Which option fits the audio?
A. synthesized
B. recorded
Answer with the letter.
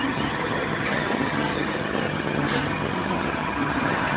A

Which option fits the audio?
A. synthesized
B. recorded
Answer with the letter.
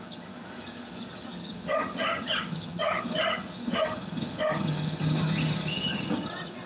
A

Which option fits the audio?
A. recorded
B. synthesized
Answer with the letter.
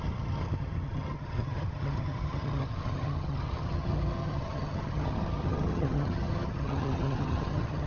B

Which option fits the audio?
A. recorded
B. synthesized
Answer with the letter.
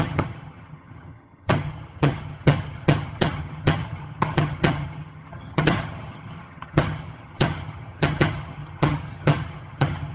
B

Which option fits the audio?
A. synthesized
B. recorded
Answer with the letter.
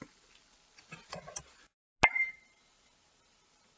B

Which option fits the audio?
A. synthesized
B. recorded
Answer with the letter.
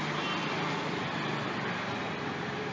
B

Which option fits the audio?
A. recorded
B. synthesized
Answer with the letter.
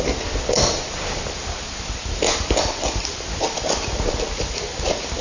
A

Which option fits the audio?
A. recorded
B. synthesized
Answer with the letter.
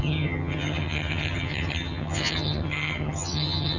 B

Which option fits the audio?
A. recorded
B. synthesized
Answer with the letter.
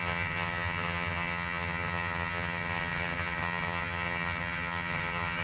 B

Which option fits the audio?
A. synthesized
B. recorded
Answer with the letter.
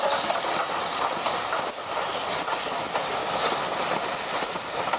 B